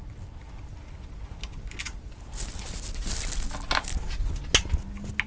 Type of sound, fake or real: real